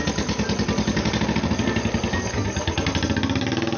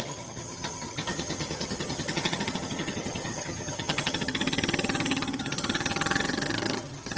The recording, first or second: first